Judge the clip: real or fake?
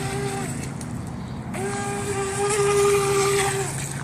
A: real